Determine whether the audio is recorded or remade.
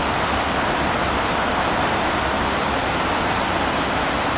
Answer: recorded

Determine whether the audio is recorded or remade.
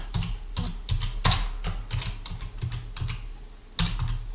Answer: recorded